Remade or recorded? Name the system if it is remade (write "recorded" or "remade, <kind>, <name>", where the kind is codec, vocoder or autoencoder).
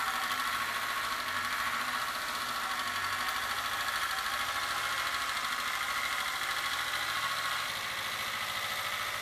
remade, vocoder, BigVGAN v2